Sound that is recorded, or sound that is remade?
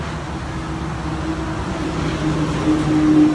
recorded